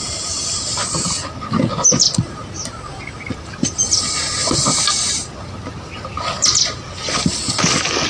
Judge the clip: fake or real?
real